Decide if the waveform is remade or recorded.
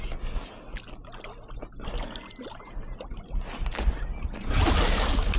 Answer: recorded